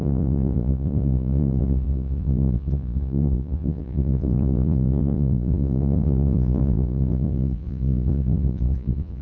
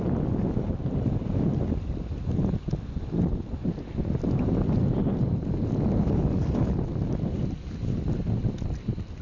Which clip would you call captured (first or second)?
second